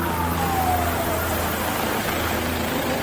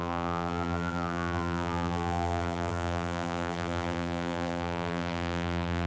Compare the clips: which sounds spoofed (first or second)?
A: second